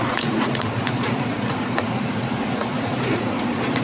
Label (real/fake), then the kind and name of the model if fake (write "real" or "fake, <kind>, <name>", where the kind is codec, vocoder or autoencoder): fake, vocoder, Vocos